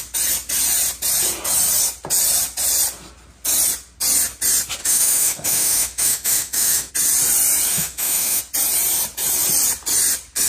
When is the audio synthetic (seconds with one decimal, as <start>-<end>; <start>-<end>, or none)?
4.8-6.9; 7.7-8.4